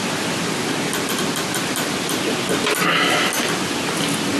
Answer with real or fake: real